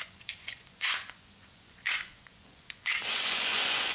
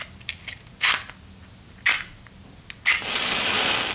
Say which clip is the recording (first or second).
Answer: second